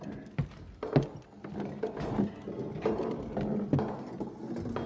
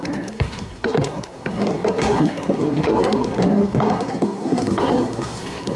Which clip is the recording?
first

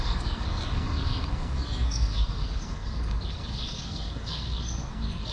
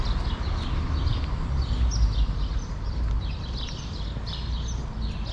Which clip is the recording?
second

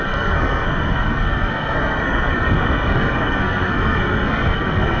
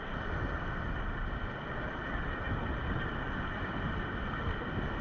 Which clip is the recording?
second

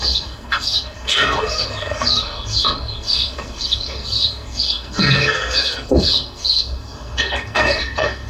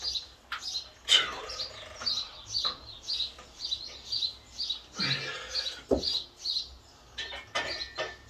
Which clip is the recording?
second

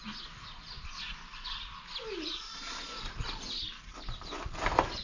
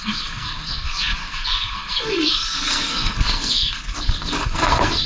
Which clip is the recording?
first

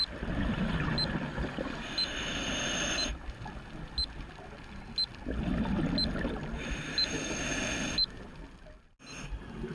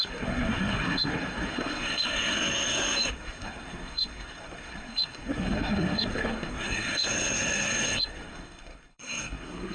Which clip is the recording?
first